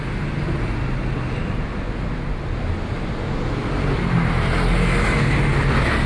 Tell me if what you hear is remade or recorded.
recorded